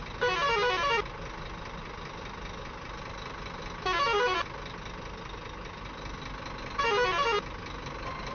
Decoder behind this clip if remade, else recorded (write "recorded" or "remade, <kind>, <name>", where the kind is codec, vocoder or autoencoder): recorded